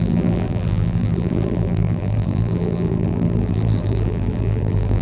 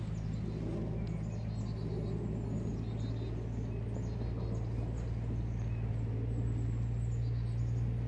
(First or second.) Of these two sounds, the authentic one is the second